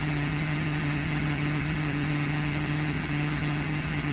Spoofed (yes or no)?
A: yes